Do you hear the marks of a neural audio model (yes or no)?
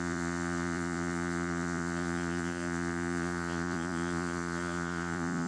yes